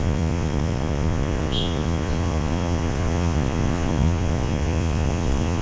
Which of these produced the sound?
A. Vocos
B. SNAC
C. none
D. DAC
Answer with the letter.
A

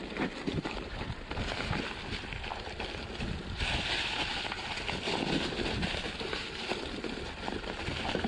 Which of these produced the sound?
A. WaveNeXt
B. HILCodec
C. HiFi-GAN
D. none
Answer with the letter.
D